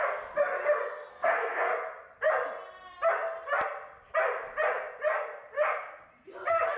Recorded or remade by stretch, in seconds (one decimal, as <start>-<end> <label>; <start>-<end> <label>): 0.0-1.1 recorded; 1.1-1.7 remade; 1.7-6.8 recorded